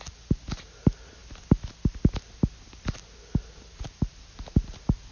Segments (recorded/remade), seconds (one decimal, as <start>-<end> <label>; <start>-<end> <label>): 0.0-5.1 recorded